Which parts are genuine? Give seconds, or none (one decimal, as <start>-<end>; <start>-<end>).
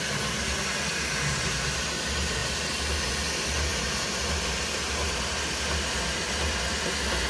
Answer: 0.0-7.3